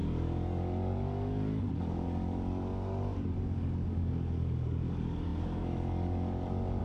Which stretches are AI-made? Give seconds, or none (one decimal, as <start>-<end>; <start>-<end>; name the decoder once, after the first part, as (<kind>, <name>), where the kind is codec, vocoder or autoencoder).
0.0-6.8 (codec, DAC)